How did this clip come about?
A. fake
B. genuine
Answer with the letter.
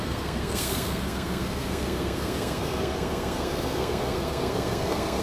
A